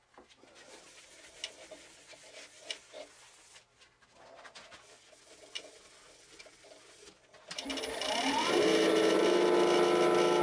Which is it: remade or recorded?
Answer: recorded